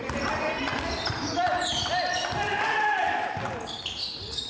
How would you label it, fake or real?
real